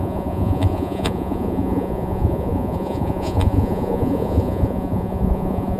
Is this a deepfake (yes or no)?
yes